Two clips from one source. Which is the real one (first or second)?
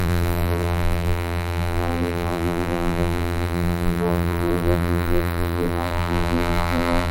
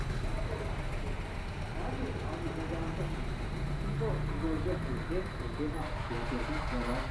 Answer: second